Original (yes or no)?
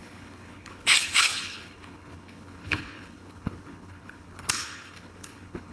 no